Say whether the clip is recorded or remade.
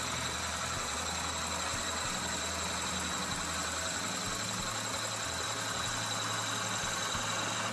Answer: recorded